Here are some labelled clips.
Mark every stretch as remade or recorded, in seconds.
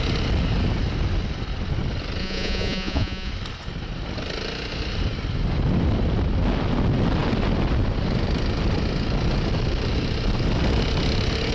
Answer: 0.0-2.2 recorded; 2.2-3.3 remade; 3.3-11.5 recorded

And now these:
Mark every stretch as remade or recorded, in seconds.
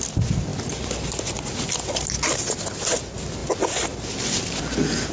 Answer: 0.0-5.1 recorded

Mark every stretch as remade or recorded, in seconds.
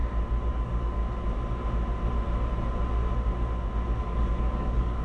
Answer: 0.0-0.5 recorded; 0.5-1.0 remade; 1.0-4.0 recorded; 4.0-5.0 remade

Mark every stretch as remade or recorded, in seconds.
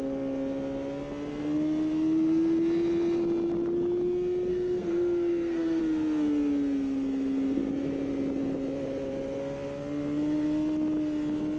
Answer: 0.0-4.5 recorded; 4.5-5.8 remade; 5.8-11.6 recorded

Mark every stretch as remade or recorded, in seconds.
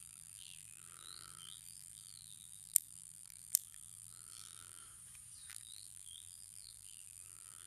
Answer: 0.0-4.8 remade; 4.8-5.5 recorded; 5.5-7.7 remade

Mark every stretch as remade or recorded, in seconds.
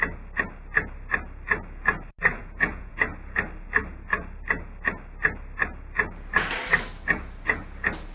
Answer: 0.0-2.4 recorded; 2.4-2.9 remade; 2.9-8.1 recorded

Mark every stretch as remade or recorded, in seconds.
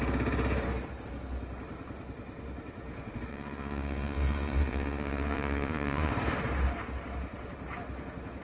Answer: 0.0-3.3 recorded; 3.3-6.1 remade; 6.1-8.4 recorded